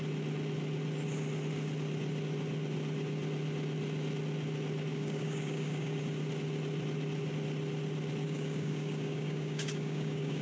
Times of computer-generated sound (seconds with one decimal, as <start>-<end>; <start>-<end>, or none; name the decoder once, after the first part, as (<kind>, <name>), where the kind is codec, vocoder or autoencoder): 4.9-6.0 (codec, DAC); 8.2-10.4